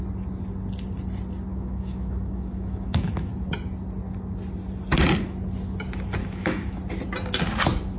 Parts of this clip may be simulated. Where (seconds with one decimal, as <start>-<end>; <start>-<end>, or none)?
1.5-3.3; 6.2-6.8